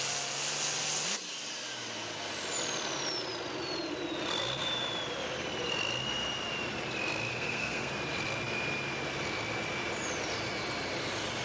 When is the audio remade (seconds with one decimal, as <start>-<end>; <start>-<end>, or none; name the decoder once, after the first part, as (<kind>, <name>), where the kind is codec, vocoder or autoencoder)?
7.3-7.9 (codec, SNAC)